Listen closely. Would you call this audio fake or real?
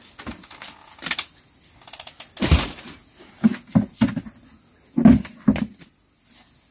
real